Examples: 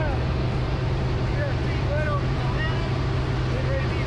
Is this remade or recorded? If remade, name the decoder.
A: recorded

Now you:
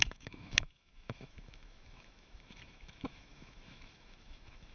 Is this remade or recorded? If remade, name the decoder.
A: remade, autoencoder, DAC-VAE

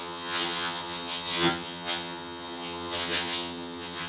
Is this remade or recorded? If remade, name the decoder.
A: remade, vocoder, HiFi-GAN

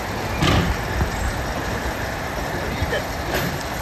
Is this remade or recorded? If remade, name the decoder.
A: recorded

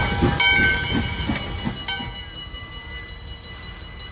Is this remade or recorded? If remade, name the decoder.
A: recorded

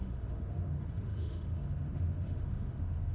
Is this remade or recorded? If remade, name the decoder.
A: remade, autoencoder, DAC-VAE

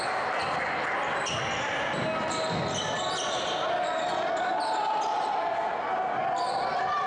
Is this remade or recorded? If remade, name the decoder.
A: recorded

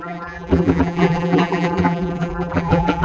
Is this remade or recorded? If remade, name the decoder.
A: remade, vocoder, BigVGAN v2